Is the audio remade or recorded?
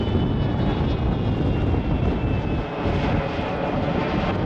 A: recorded